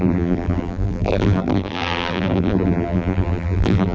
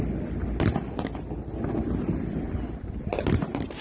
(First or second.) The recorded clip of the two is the second